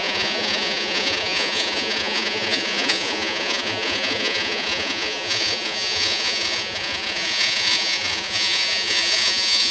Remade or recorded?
remade